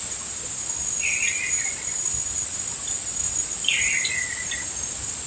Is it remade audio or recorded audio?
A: recorded